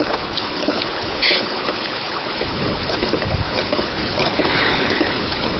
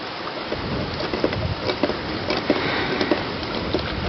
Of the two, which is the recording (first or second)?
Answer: second